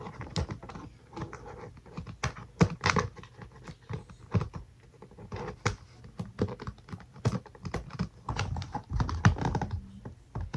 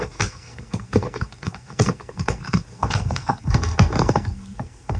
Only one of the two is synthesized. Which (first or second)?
second